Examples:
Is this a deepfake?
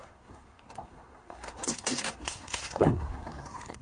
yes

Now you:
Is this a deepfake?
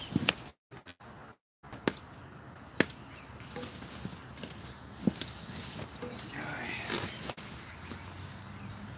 no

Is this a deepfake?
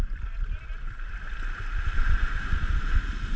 no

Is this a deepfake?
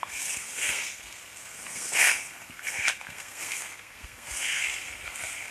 yes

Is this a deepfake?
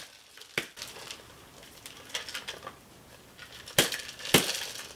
no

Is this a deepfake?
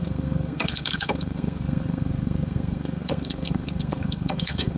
yes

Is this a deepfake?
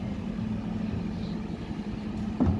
no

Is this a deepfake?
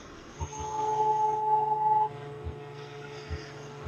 yes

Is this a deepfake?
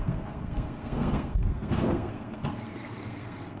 yes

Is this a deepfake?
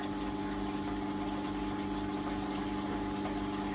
no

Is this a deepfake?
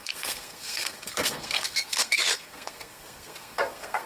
yes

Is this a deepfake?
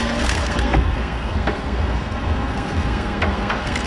yes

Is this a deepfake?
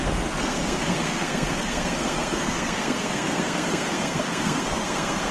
yes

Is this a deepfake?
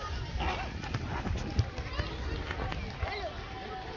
no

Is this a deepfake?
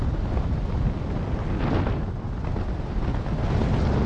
no